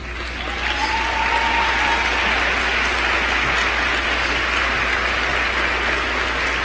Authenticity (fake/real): real